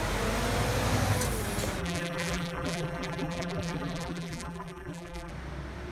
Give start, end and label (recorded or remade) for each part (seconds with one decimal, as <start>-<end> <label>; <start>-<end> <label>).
0.0-1.8 recorded; 1.8-5.3 remade; 5.3-5.9 recorded